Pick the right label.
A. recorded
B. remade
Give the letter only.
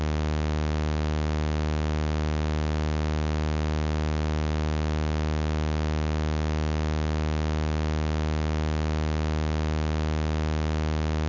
A